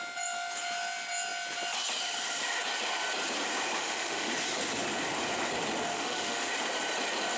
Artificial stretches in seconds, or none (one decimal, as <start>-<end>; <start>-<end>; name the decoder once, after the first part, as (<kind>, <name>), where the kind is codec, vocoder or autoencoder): 3.8-4.3 (autoencoder, DAC-VAE); 5.9-6.5